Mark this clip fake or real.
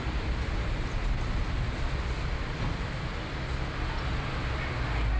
real